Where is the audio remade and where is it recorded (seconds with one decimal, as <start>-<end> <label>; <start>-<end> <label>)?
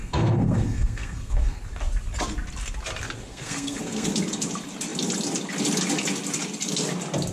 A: 0.0-1.6 remade; 1.6-3.3 recorded; 3.3-4.1 remade; 4.1-7.3 recorded